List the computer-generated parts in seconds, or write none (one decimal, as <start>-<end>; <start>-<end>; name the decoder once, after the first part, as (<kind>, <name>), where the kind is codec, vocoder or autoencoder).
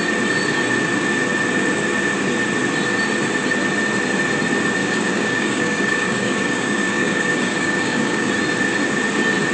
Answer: 4.8-8.3 (codec, DAC)